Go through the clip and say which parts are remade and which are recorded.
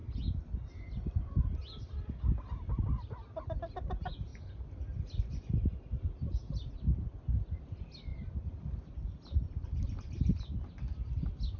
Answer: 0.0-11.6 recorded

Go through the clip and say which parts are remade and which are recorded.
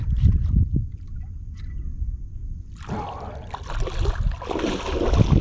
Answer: 0.0-5.4 recorded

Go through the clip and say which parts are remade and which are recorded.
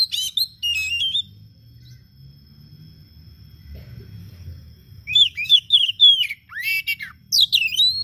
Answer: 0.0-4.2 recorded; 4.2-6.1 remade; 6.1-8.0 recorded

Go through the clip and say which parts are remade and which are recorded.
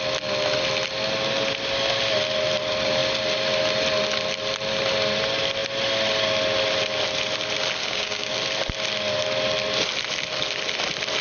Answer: 0.0-7.8 recorded; 7.8-8.3 remade; 8.3-11.2 recorded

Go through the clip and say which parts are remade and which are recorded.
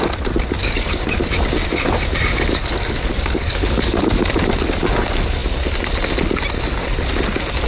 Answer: 0.0-0.6 recorded; 0.6-1.2 remade; 1.2-2.6 recorded; 2.6-4.3 remade; 4.3-7.7 recorded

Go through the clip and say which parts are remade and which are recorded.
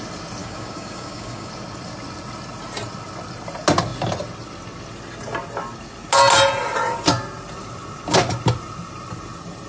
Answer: 0.0-0.4 recorded; 0.4-1.5 remade; 1.5-9.7 recorded